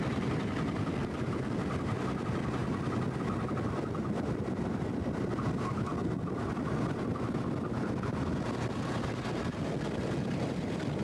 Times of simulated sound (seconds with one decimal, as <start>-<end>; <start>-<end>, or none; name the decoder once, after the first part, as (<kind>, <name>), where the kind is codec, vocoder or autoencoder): 0.0-2.6 (vocoder, BigVGAN v2); 3.5-11.0